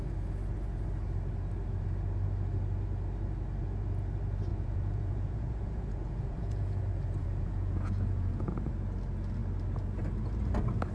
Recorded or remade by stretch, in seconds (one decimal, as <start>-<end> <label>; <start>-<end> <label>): 0.0-4.5 recorded; 4.5-6.8 remade; 6.8-7.2 recorded; 7.2-8.7 remade; 8.7-10.9 recorded